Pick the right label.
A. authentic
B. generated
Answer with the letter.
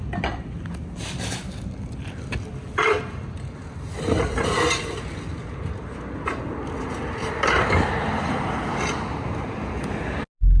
A